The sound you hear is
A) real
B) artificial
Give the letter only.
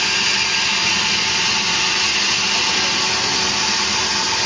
A